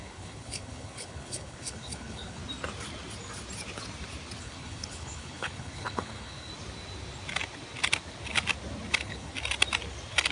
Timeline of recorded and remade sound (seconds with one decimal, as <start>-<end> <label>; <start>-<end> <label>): 0.0-2.4 remade; 2.4-4.4 recorded; 4.4-6.5 remade; 6.5-8.9 recorded; 8.9-9.3 remade; 9.3-10.3 recorded